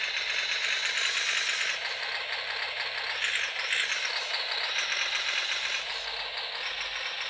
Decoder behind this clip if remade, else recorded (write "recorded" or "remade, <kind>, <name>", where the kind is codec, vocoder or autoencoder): recorded